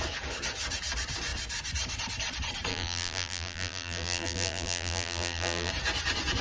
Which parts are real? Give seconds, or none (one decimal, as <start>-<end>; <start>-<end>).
0.0-2.7; 5.7-6.4